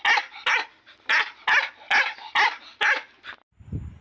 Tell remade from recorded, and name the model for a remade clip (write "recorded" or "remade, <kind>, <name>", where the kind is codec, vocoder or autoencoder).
recorded